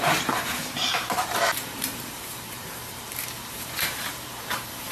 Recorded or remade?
remade